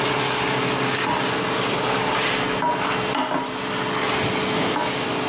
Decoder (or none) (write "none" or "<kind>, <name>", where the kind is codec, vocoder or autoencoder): none